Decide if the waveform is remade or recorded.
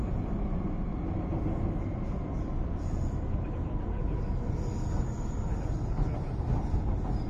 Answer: recorded